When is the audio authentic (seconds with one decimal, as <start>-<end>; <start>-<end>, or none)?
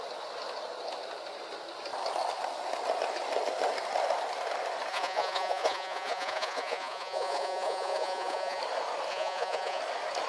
0.0-4.9; 8.6-9.1; 9.8-10.3